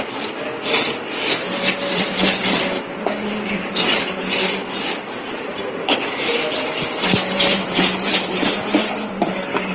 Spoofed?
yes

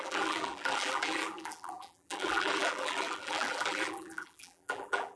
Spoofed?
yes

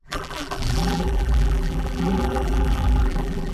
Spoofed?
yes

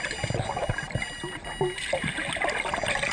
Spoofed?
no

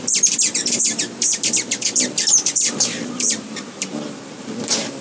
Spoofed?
yes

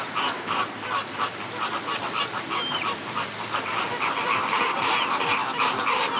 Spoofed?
yes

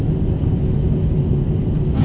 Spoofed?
no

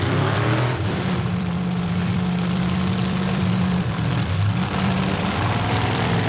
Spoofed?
yes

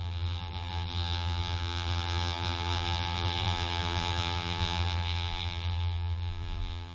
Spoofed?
yes